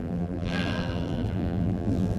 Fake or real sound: fake